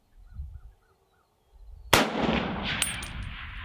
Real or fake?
real